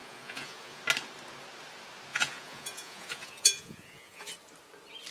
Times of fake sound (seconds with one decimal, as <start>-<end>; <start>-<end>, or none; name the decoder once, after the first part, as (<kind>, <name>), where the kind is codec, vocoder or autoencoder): 0.0-0.8 (vocoder, Vocos); 2.1-4.3